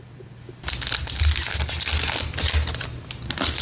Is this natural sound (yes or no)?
yes